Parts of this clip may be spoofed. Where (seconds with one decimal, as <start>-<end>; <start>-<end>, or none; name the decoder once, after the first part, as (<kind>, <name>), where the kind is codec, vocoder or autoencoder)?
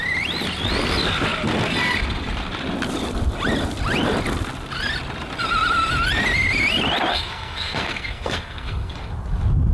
7.1-9.1 (codec, SNAC)